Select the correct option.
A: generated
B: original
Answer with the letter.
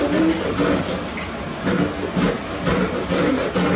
B